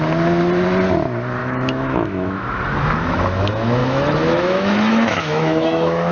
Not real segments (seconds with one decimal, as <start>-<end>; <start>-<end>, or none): 1.4-2.6; 3.8-6.1